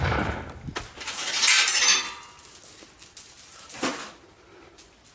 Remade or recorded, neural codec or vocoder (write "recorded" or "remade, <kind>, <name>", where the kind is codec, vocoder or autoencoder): recorded